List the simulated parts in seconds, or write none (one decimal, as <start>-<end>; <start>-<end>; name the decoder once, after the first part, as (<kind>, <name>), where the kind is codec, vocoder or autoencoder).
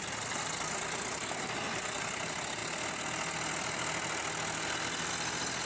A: none